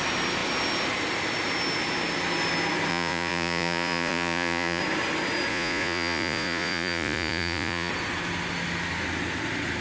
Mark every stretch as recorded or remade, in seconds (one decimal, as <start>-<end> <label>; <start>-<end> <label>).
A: 0.0-2.9 recorded; 2.9-4.8 remade; 4.8-5.5 recorded; 5.5-7.9 remade; 7.9-9.8 recorded